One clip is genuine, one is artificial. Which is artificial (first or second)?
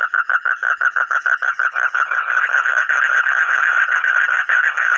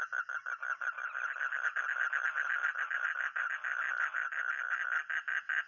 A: first